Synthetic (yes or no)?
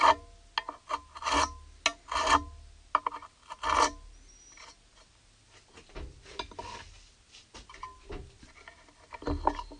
no